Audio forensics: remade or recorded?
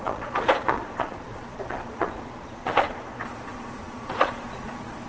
remade